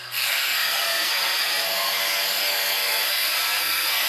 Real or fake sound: fake